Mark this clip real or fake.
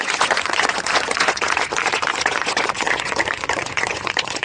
fake